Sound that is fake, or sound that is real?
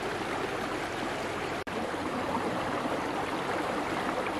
fake